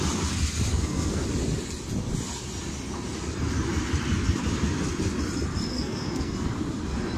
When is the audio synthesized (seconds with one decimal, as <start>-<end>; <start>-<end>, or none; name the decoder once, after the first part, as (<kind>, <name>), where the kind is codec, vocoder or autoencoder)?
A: 0.7-1.2 (codec, SNAC); 5.7-6.5